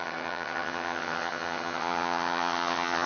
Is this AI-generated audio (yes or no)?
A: yes